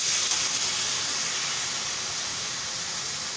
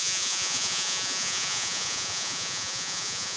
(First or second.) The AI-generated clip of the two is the second